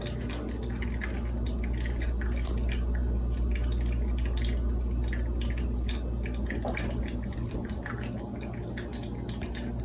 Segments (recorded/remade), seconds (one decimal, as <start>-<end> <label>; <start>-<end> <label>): 0.0-9.8 recorded